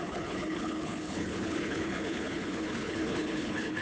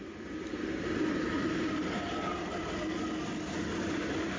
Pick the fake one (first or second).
first